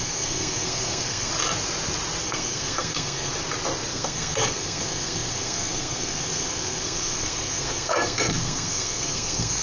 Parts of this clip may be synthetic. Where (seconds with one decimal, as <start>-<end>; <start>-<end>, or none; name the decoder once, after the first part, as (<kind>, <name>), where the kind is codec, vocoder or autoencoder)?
0.0-1.3 (codec, SNAC); 2.2-3.3; 3.9-9.6